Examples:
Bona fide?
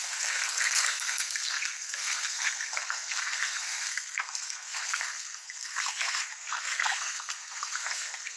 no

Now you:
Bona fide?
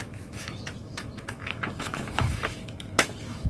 no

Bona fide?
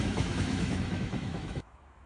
no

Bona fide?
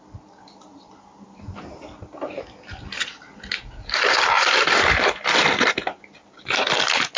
yes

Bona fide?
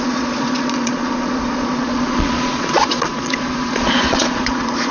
no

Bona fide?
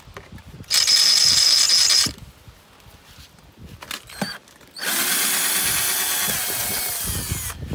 yes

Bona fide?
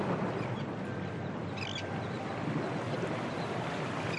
yes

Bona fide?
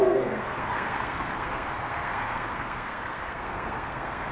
no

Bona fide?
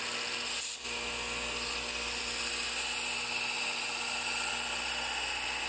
yes